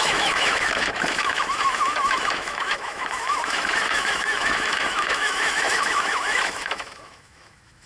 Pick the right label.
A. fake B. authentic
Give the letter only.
A